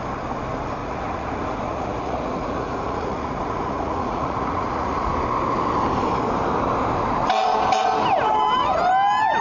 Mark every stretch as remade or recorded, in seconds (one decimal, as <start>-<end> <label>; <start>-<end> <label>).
0.0-0.8 recorded; 0.8-5.1 remade; 5.1-9.4 recorded